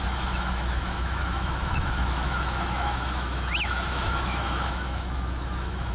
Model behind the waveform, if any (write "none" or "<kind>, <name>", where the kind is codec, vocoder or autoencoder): autoencoder, DAC-VAE